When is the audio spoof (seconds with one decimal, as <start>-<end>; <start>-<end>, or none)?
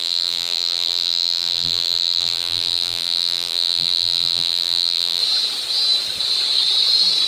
0.0-5.2